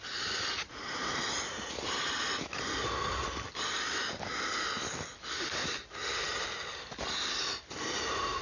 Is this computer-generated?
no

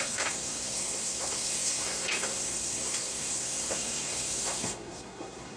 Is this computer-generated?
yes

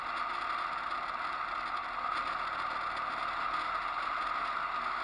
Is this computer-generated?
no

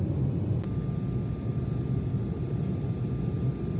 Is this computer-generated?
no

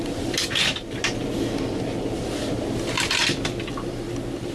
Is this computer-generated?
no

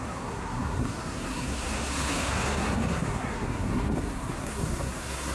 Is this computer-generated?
yes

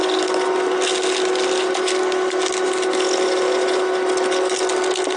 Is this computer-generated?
no